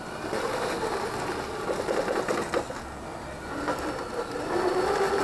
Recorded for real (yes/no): yes